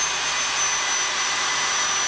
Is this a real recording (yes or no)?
yes